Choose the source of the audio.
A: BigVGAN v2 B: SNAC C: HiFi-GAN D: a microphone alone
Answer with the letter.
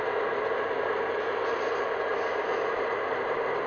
D